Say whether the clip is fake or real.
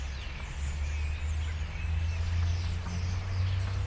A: real